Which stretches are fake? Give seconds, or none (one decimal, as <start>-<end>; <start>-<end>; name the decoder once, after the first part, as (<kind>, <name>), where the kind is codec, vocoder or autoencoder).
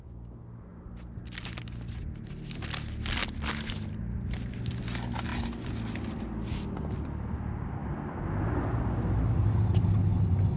none